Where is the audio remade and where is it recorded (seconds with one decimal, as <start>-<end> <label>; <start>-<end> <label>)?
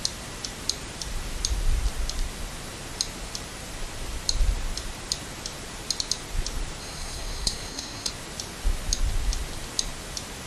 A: 0.0-6.8 recorded; 6.8-8.1 remade; 8.1-10.5 recorded